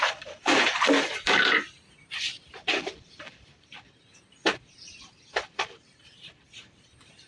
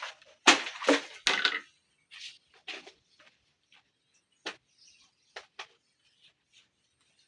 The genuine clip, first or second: second